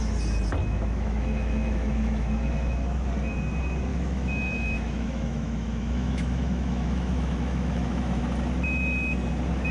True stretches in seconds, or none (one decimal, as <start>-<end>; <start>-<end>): 0.0-0.6; 3.1-3.9; 8.2-9.7